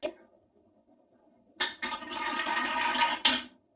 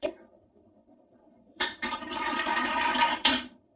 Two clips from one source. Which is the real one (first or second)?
first